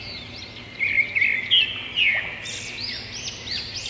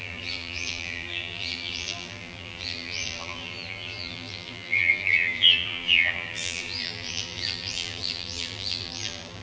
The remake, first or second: second